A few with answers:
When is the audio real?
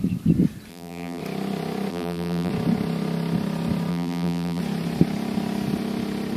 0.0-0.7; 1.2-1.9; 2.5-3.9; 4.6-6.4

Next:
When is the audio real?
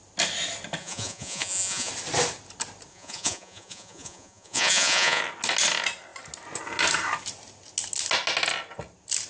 0.0-0.8; 1.9-2.9; 5.2-9.3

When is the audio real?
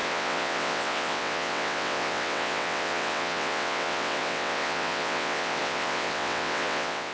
none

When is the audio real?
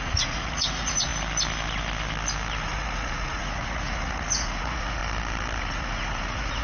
1.1-2.6; 5.0-5.6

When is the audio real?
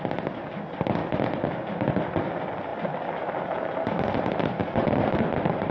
0.0-5.7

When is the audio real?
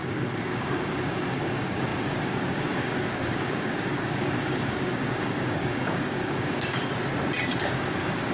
6.9-7.6